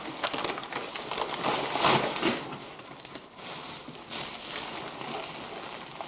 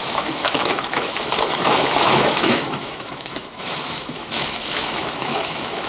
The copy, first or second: second